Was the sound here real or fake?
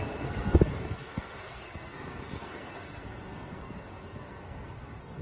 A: fake